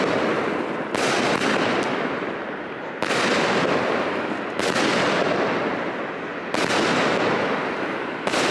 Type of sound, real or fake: real